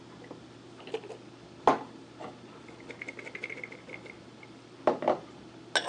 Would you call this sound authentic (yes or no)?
yes